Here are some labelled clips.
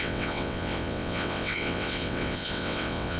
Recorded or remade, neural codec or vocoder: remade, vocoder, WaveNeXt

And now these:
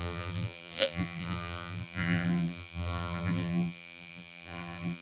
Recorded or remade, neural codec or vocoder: remade, vocoder, BigVGAN v2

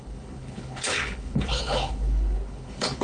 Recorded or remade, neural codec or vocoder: remade, codec, HILCodec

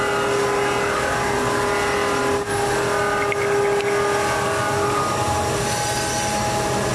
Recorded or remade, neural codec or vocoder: recorded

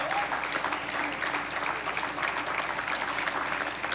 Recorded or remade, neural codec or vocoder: recorded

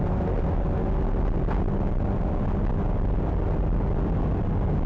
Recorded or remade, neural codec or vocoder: recorded